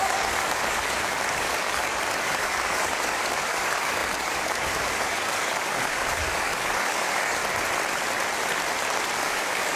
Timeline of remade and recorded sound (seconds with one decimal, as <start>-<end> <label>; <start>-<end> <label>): 0.0-7.4 remade; 7.4-9.2 recorded; 9.2-9.8 remade